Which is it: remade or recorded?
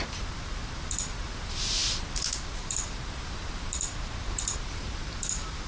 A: remade